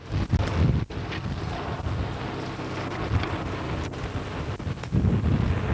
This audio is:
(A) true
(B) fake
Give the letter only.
A